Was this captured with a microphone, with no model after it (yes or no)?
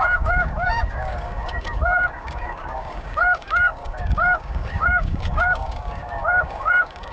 no